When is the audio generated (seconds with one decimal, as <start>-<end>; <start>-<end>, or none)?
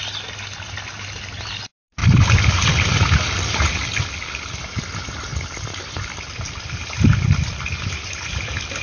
2.0-3.7; 5.3-7.8